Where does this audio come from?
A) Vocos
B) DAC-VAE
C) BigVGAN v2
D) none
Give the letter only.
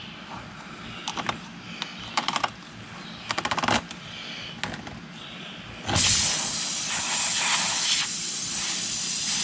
D